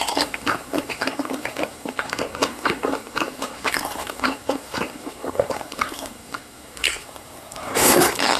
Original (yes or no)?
no